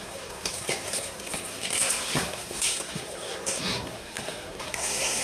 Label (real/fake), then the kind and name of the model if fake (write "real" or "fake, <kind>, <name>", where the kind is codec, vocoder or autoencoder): fake, codec, SNAC